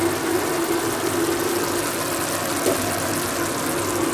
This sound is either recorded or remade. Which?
recorded